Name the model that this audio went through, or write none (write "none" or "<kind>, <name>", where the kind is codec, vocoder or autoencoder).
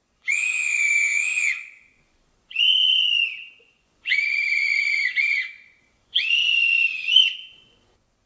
vocoder, Vocos